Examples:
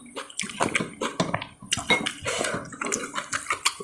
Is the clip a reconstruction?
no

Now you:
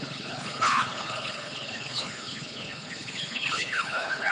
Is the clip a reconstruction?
yes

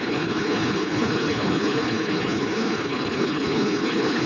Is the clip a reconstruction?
yes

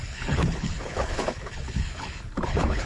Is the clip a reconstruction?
yes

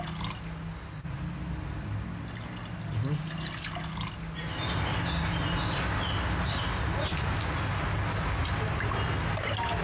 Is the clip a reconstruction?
no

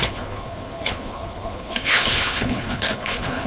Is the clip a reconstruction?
yes